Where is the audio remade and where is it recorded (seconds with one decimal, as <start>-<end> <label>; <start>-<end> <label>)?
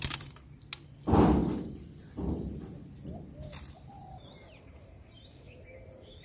0.0-1.4 recorded; 1.4-2.1 remade; 2.1-4.0 recorded; 4.0-6.2 remade